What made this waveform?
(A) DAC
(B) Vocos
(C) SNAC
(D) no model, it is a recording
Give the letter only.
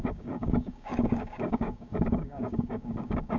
A